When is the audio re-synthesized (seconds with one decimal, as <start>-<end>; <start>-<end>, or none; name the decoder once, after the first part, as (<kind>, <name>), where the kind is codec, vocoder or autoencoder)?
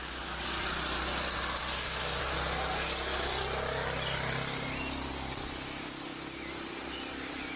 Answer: 1.6-2.2 (codec, SNAC)